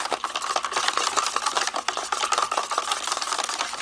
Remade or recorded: recorded